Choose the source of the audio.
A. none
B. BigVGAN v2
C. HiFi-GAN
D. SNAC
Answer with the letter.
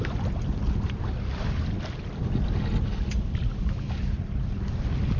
A